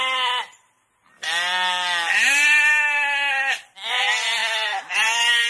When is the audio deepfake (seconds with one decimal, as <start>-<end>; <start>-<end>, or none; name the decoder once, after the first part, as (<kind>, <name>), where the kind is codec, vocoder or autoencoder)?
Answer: 3.3-3.9 (vocoder, BigVGAN v2); 4.4-5.5